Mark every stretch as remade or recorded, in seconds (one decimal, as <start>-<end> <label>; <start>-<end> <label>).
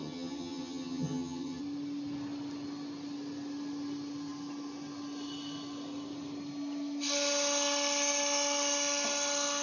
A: 0.0-1.6 remade; 1.6-9.6 recorded